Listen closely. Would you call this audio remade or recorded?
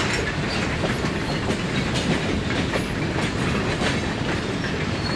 recorded